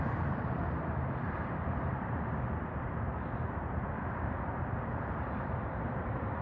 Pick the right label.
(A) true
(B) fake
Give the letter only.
B